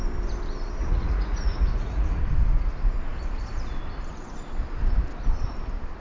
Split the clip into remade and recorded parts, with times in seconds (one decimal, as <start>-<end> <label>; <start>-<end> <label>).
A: 0.0-0.8 recorded; 0.8-2.2 remade; 2.2-6.0 recorded